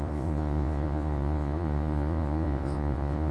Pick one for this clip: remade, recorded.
remade